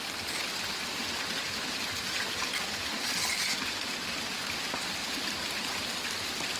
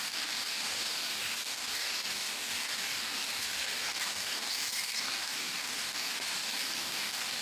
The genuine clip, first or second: first